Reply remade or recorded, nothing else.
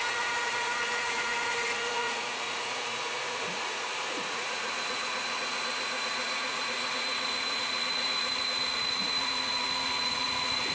remade